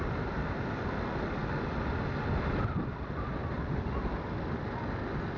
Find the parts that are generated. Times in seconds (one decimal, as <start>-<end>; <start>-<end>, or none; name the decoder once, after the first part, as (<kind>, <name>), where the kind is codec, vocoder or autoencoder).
none